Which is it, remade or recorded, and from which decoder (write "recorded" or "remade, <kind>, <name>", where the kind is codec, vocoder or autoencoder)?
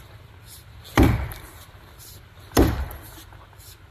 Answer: recorded